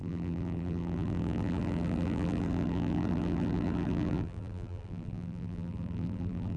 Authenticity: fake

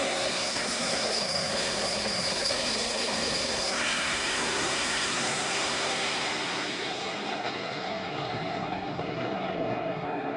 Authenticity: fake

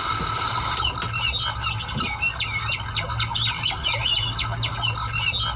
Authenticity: real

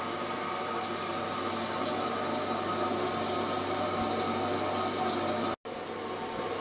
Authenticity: real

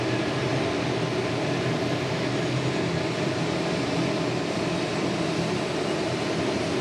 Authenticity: real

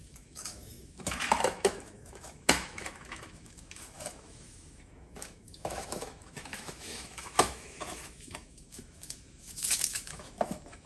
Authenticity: fake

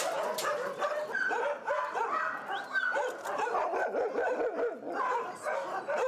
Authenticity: real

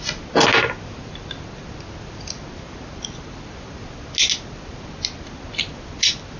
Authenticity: real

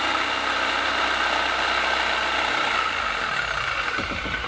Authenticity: real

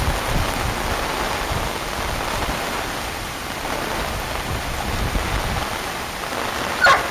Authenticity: real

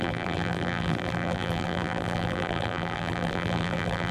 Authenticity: fake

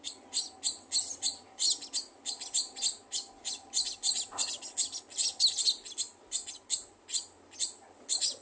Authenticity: real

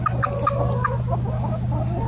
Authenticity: real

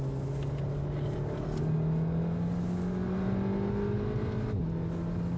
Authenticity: real